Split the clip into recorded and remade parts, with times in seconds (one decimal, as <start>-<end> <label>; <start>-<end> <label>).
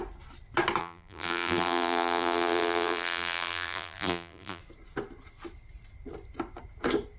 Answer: 0.0-0.8 recorded; 0.8-4.6 remade; 4.6-7.2 recorded